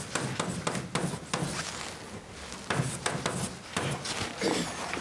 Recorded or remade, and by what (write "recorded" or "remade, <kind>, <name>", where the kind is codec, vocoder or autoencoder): recorded